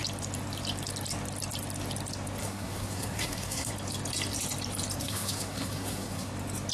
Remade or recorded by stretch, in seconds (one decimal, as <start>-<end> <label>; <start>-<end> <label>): 0.0-2.4 recorded; 2.4-3.7 remade; 3.7-5.0 recorded; 5.0-6.3 remade; 6.3-6.7 recorded